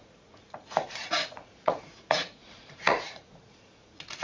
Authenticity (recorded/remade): remade